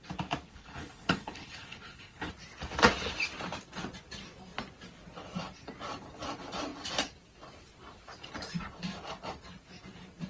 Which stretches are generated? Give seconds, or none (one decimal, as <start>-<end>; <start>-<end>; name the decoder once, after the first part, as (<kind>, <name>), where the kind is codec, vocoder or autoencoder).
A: 0.5-2.3 (codec, HILCodec)